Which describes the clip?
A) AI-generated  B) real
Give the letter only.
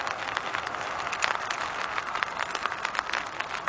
B